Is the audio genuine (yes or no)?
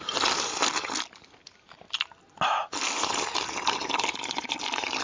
yes